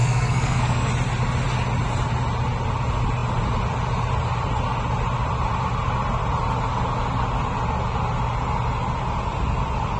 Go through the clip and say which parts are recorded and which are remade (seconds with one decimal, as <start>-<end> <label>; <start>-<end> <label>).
0.0-0.9 remade; 0.9-10.0 recorded